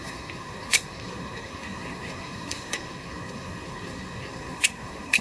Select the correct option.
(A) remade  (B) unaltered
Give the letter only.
A